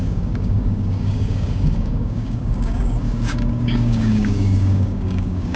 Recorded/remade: remade